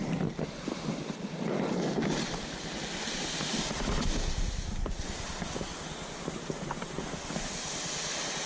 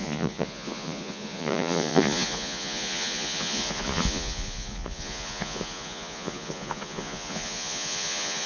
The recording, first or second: first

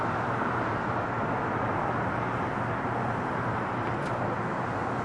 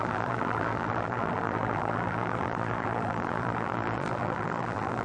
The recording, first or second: first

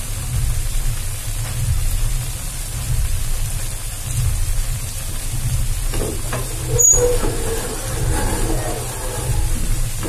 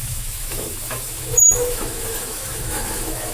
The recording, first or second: first